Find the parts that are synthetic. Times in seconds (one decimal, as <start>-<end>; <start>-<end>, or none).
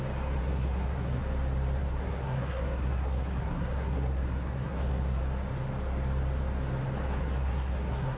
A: 0.4-1.2; 1.8-5.2; 7.2-8.2